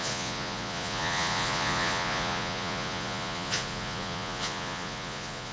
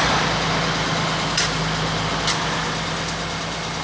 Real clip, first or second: second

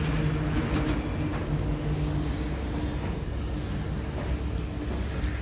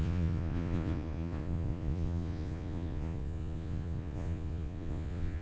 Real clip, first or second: first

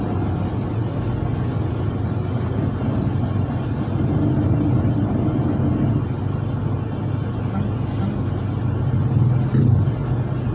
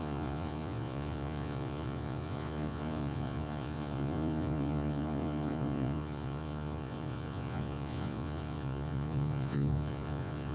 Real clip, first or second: first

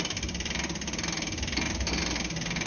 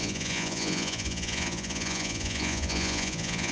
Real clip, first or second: first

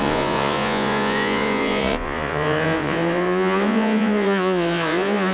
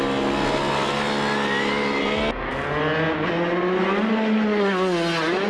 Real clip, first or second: second